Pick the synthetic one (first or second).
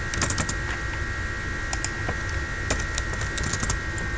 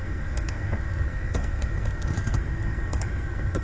second